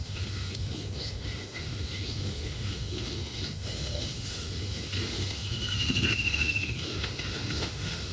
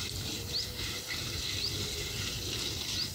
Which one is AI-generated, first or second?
first